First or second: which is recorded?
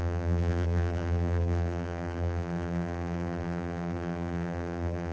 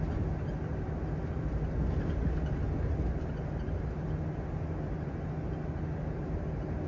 second